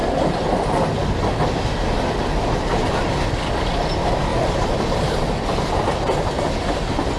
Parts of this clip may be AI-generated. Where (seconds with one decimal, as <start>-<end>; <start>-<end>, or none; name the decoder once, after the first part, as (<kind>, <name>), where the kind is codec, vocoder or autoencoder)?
0.0-0.5 (vocoder, BigVGAN v2); 4.3-5.3

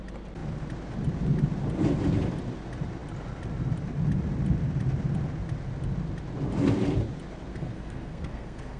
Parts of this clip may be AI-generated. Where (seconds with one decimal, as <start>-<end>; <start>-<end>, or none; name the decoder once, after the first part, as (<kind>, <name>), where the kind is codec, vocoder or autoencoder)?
7.5-8.8 (codec, SNAC)